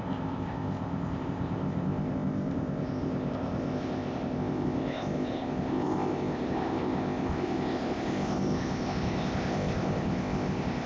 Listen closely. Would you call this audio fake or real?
fake